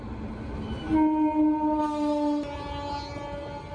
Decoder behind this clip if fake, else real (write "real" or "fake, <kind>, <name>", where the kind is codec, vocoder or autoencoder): real